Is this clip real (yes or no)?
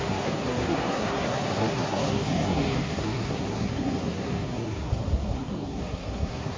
no